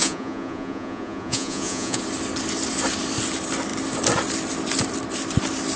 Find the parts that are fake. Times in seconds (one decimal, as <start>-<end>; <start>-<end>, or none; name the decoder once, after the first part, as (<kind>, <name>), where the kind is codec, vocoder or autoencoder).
0.0-2.0 (vocoder, Vocos)